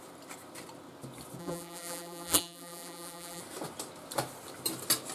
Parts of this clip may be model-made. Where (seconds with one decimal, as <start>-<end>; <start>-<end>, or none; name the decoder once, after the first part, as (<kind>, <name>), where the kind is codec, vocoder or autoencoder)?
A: 1.4-3.4 (vocoder, BigVGAN v2)

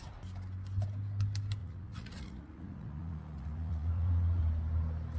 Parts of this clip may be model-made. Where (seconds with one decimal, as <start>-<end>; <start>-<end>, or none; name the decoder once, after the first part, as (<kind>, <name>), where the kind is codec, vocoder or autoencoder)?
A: 1.6-4.4 (vocoder, Vocos)

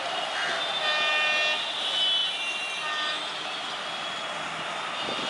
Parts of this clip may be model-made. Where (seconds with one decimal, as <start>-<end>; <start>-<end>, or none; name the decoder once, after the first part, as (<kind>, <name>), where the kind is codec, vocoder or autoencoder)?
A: none

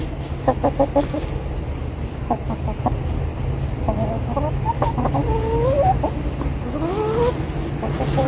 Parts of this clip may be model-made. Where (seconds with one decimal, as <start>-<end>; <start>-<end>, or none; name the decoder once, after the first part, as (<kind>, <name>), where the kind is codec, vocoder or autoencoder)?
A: none

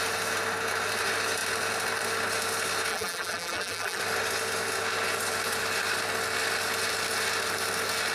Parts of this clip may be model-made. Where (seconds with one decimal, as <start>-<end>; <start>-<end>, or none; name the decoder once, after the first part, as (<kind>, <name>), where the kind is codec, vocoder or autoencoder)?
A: 2.9-4.0 (vocoder, BigVGAN v2)

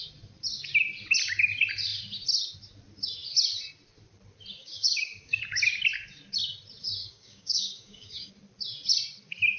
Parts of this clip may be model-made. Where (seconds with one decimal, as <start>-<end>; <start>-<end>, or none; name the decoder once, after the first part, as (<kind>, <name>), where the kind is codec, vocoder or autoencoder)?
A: 4.6-5.4 (codec, DAC); 7.0-8.3

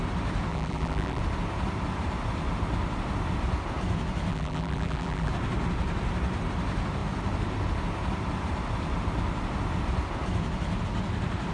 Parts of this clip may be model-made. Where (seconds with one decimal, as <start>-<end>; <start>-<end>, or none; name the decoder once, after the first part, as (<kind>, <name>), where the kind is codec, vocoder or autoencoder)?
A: 0.5-1.2 (vocoder, BigVGAN v2); 4.3-5.3

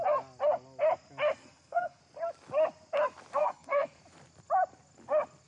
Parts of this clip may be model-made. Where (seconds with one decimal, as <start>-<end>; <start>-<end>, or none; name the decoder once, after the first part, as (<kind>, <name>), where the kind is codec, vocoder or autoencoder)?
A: 1.4-2.0 (codec, SNAC); 3.4-4.0